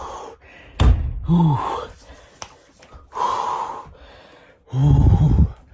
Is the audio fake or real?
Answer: real